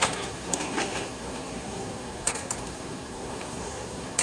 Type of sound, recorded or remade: remade